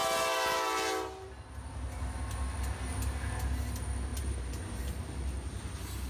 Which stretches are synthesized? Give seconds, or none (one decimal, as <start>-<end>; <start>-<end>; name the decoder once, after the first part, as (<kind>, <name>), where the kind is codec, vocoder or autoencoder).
4.1-4.8 (vocoder, BigVGAN v2)